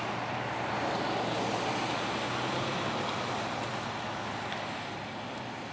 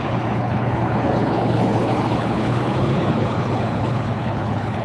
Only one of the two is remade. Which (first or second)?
second